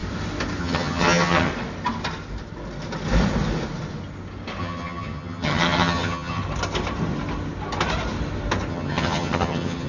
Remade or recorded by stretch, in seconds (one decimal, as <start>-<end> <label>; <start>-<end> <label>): 0.0-0.6 recorded; 0.6-1.5 remade; 1.5-4.6 recorded; 4.6-6.4 remade; 6.4-8.7 recorded; 8.7-9.9 remade